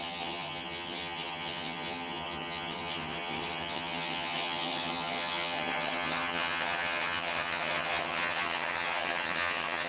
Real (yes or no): no